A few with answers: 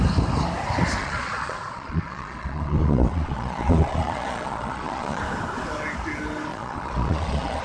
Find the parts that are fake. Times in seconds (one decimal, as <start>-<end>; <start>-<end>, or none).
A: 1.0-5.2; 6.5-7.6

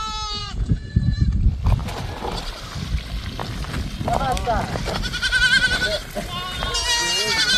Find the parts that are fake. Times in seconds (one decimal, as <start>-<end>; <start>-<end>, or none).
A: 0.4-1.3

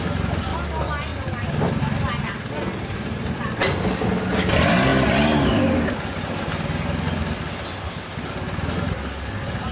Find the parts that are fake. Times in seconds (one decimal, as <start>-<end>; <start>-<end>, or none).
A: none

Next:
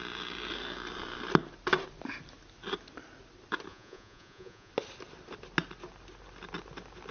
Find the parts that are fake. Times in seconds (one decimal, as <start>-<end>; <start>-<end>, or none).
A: 3.7-4.7

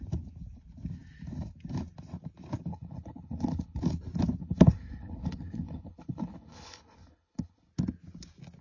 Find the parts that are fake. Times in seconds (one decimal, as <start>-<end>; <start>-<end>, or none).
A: 2.7-3.8; 4.4-7.7

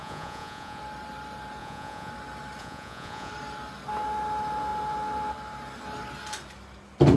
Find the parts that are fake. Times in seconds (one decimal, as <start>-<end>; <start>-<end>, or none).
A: 0.0-0.8; 1.6-2.1; 2.6-3.3

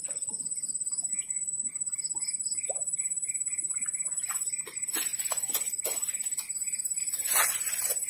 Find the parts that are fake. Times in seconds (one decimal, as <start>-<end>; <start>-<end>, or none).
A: 1.1-1.7